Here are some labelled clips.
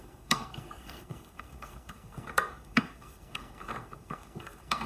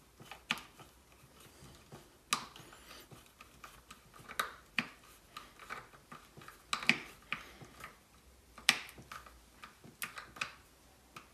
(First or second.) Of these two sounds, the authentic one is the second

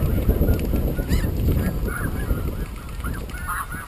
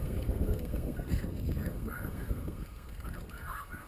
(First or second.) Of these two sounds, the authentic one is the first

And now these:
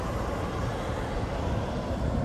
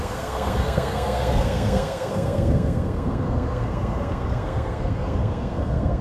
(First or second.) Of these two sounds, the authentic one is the first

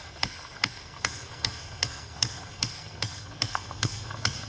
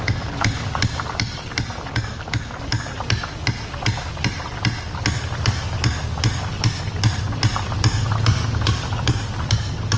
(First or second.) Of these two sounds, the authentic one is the second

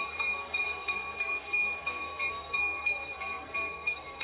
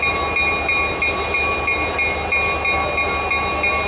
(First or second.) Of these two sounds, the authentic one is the second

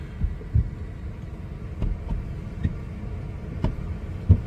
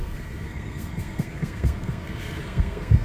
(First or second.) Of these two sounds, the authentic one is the first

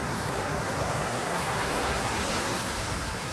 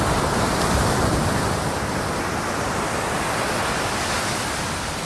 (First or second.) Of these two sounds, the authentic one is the second